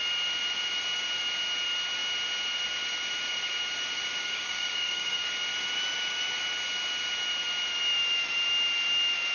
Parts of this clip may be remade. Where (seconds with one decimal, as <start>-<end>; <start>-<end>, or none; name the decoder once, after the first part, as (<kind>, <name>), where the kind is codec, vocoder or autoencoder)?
4.2-5.3 (codec, DAC)